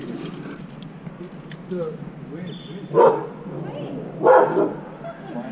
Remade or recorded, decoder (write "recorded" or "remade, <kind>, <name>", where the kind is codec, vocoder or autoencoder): recorded